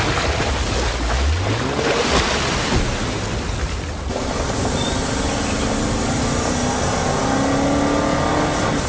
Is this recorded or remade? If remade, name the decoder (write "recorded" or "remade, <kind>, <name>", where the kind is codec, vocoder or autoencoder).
recorded